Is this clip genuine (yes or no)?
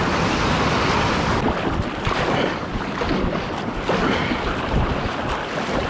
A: yes